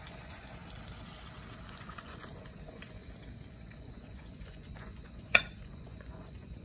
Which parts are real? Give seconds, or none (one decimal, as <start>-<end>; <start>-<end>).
0.6-1.7; 3.0-3.5